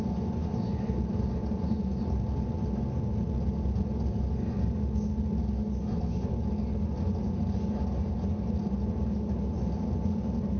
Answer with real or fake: real